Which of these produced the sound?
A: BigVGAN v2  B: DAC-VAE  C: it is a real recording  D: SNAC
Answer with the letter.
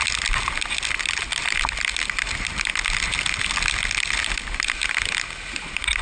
C